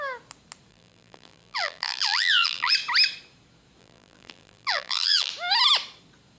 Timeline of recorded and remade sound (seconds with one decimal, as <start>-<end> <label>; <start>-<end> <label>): 0.0-0.7 recorded; 0.7-2.7 remade; 2.7-3.8 recorded; 3.8-5.3 remade; 5.3-6.4 recorded